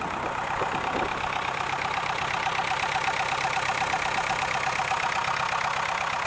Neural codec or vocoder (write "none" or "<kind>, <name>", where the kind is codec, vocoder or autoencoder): none